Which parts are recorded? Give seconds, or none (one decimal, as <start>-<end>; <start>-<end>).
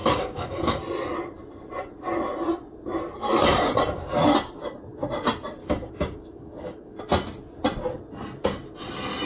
0.8-5.6; 7.0-9.3